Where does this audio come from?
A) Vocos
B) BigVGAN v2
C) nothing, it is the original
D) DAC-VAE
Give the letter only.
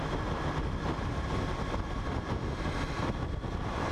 C